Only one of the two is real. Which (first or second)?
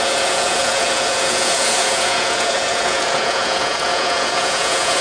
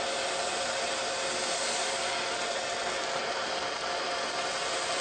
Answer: second